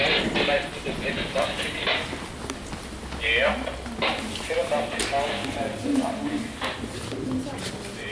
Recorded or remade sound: recorded